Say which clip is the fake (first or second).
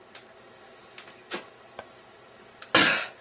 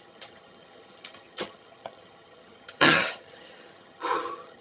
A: second